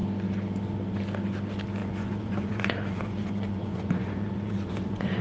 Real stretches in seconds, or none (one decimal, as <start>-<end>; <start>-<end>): 0.0-1.8